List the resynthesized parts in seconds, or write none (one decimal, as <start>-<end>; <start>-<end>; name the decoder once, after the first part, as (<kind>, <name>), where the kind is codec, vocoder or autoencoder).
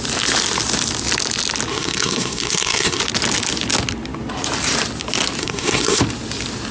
1.7-3.0 (codec, SNAC); 5.4-6.0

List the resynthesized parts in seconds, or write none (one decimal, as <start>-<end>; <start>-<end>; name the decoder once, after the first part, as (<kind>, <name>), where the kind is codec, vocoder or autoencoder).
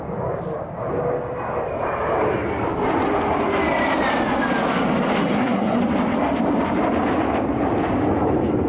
5.2-5.8 (codec, SNAC)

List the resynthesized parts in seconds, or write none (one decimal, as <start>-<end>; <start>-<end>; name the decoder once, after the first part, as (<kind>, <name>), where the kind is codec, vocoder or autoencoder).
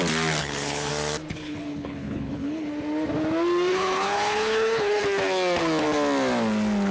0.4-0.9 (codec, HILCodec); 1.3-2.7; 3.7-5.0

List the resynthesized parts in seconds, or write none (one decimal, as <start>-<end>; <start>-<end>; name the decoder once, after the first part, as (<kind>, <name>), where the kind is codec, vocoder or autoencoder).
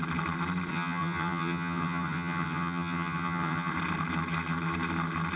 0.7-3.7 (vocoder, HiFi-GAN)